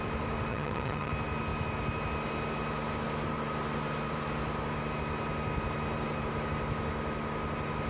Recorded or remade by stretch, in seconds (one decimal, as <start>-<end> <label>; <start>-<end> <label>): 0.0-0.5 recorded; 0.5-1.1 remade; 1.1-7.9 recorded